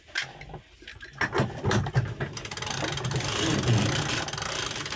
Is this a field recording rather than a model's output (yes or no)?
yes